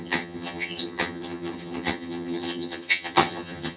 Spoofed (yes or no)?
yes